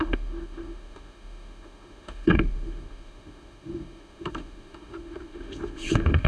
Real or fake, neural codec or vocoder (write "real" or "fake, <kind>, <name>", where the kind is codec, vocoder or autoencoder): fake, autoencoder, DAC-VAE